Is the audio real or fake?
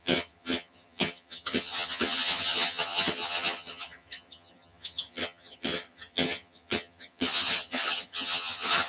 fake